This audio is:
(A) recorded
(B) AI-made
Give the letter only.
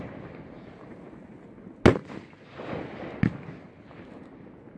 A